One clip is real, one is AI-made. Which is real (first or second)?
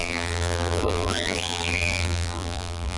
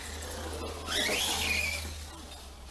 second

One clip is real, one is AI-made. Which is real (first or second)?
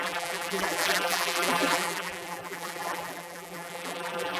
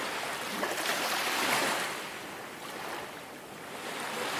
second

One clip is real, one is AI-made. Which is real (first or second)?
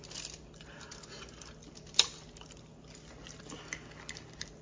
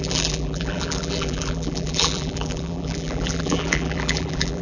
first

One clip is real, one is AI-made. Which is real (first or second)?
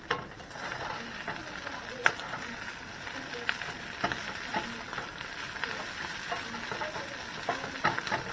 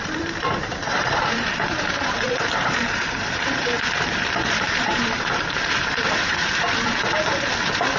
first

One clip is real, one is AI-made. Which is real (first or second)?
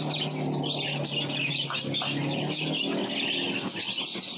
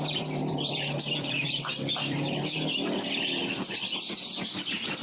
first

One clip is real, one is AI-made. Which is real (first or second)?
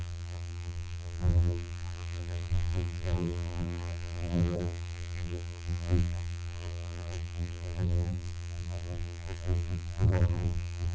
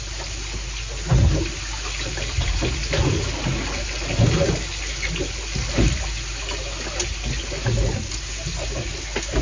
second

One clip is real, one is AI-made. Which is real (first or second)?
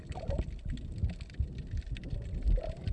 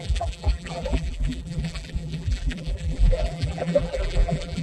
first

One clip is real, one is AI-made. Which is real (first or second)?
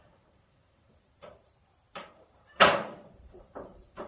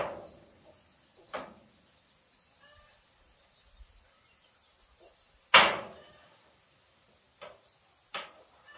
second